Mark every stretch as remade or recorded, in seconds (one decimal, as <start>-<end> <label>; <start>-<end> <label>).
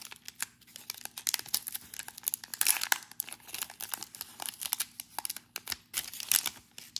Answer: 0.0-7.0 recorded